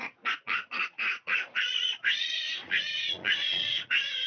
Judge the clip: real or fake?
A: fake